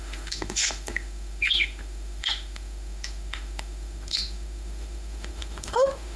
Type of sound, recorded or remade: remade